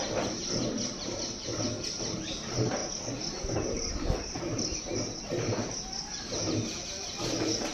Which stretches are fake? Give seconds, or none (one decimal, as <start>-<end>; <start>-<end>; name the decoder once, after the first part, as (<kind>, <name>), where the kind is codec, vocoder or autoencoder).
none